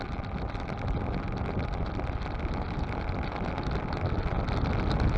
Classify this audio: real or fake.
real